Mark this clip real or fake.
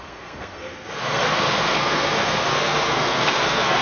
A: fake